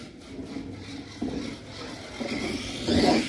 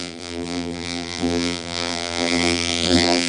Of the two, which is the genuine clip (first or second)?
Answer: first